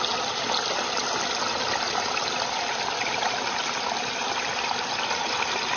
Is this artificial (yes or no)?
no